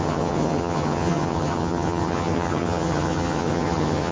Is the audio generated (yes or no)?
yes